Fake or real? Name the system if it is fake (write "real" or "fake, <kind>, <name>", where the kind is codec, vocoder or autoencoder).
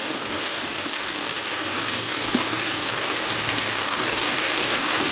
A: fake, codec, DAC